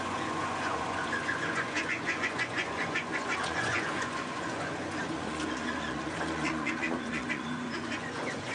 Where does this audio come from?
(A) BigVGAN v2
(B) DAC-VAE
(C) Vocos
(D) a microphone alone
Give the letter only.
C